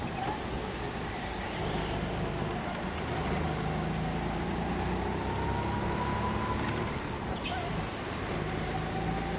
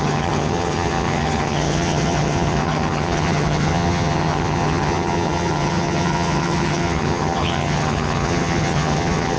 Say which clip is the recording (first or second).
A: first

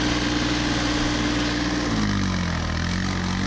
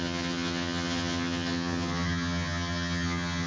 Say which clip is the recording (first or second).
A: first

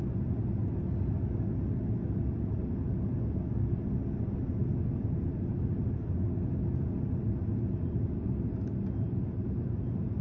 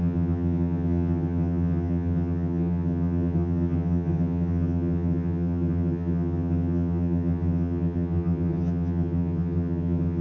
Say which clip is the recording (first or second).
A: first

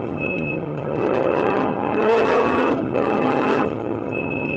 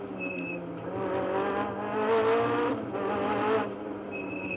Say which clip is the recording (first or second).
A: second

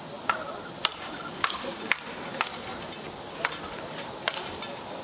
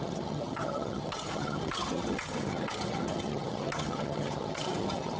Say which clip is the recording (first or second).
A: first